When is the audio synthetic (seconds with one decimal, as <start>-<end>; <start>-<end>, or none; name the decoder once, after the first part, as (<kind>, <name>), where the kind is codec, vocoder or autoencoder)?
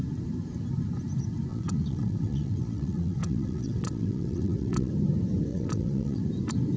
1.5-4.9 (vocoder, WaveNeXt); 5.5-6.2